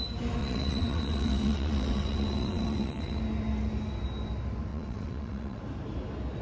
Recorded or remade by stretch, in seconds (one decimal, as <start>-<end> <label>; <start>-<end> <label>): 0.0-0.4 recorded; 0.4-3.2 remade; 3.2-4.7 recorded; 4.7-5.6 remade; 5.6-6.4 recorded